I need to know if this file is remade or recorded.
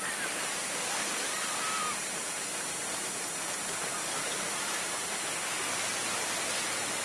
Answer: recorded